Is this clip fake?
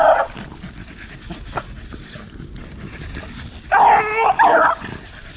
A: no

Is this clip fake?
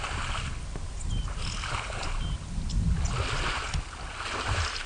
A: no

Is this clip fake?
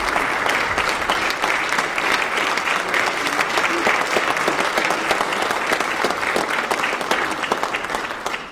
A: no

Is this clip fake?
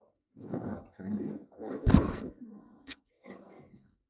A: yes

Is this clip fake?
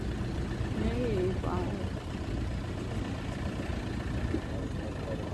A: no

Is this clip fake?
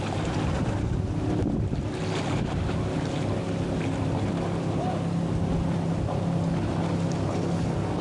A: no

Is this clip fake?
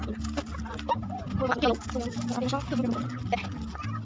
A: no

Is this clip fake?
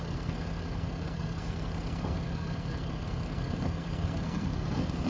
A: yes